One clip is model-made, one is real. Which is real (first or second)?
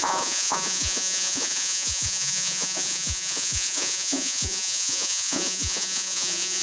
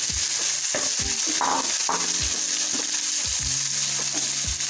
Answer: second